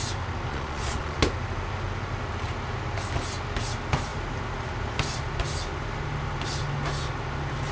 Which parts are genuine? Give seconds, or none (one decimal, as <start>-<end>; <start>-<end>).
0.0-0.5; 1.2-7.7